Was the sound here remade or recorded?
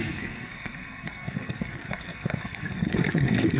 remade